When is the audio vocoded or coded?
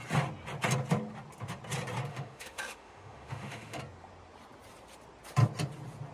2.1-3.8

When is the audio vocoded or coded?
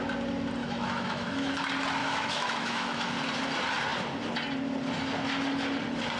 0.6-1.5; 2.0-3.1